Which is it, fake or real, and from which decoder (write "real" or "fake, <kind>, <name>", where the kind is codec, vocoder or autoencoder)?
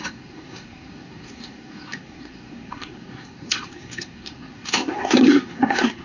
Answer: fake, codec, SNAC